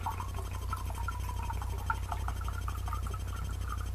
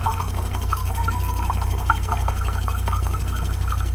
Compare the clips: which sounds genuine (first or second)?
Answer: first